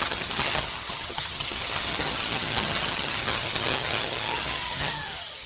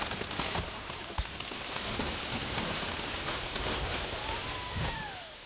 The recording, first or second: second